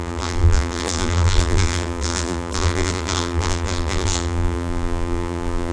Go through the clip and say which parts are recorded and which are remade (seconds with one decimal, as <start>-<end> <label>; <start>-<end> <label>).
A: 0.0-5.7 remade